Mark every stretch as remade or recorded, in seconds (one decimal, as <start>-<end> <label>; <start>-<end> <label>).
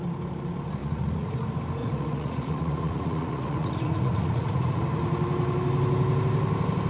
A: 0.0-0.8 recorded; 0.8-1.3 remade; 1.3-1.8 recorded; 1.8-4.8 remade; 4.8-6.9 recorded